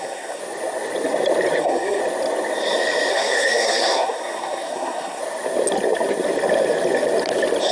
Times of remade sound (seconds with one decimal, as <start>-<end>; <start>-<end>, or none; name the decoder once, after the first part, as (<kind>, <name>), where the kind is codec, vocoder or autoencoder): 0.0-0.4 (codec, SNAC); 1.6-2.0; 3.1-5.2